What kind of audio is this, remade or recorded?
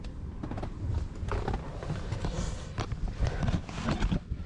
recorded